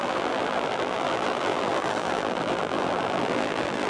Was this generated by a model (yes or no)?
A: yes